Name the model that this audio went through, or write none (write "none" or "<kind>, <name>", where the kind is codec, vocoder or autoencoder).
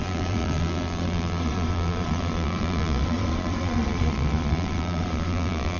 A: vocoder, Vocos